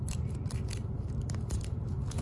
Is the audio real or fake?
fake